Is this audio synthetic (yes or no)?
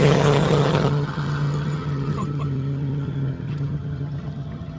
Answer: yes